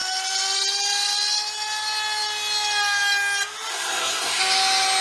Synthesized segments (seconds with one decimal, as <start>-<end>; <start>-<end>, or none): 3.7-4.4